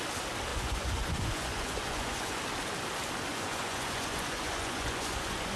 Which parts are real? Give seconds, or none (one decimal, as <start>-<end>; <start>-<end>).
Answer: 0.0-0.5; 2.4-3.3